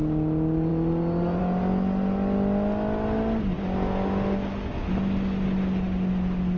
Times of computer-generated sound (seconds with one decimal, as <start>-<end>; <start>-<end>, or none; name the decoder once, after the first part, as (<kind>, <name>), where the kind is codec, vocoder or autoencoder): none